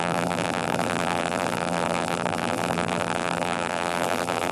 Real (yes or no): no